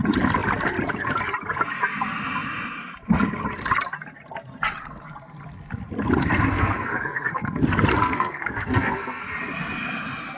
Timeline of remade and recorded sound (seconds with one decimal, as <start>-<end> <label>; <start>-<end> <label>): 0.0-6.5 recorded; 6.5-7.5 remade; 7.5-8.0 recorded; 8.0-9.2 remade; 9.2-10.4 recorded